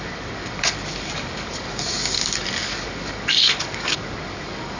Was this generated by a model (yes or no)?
yes